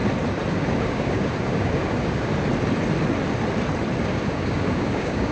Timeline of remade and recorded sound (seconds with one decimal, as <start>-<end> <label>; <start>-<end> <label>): 0.0-0.5 recorded; 0.5-2.3 remade; 2.3-4.0 recorded; 4.0-5.3 remade